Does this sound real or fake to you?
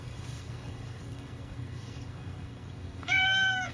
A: fake